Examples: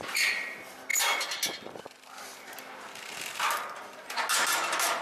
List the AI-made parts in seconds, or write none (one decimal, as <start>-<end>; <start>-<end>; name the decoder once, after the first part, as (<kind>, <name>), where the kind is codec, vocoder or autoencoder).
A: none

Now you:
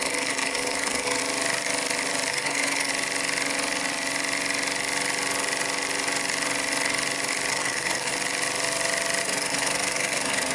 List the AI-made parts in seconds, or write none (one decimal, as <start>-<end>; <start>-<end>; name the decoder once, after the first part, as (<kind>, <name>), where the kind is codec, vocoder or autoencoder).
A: 0.0-1.2 (codec, SNAC); 2.3-2.9; 7.5-8.1; 9.2-10.5

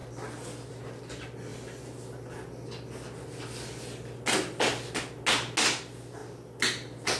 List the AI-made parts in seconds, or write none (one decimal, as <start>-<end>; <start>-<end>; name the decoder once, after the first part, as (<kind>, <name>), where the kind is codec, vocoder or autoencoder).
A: none